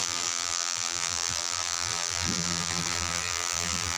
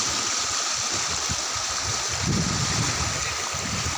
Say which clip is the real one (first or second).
second